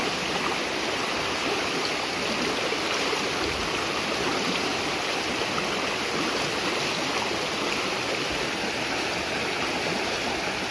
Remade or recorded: recorded